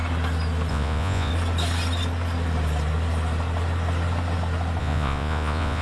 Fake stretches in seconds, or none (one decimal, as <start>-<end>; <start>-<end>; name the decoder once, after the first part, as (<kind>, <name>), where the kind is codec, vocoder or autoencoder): 0.7-1.3 (vocoder, Vocos); 4.8-5.8